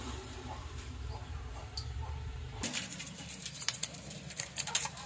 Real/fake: fake